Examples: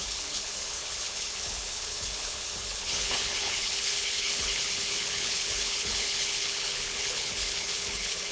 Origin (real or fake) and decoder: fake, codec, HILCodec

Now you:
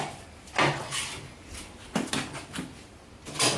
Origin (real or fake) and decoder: real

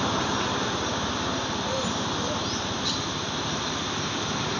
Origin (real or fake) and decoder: real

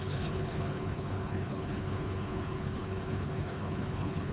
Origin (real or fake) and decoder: fake, codec, HILCodec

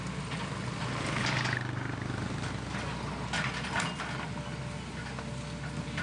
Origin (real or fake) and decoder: real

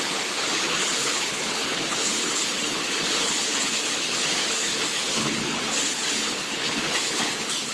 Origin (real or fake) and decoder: fake, codec, HILCodec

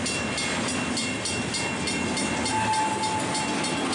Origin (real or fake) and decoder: real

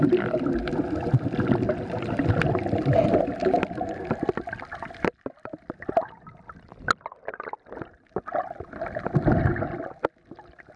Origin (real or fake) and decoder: real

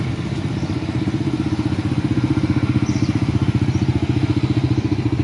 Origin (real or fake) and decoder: real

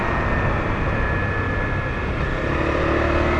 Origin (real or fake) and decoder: real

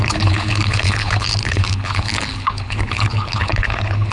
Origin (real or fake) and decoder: fake, codec, HILCodec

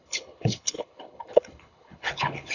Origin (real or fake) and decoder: fake, codec, HILCodec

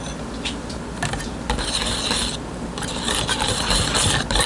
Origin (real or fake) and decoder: real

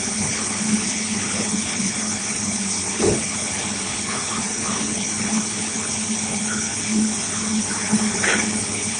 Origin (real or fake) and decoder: fake, codec, HILCodec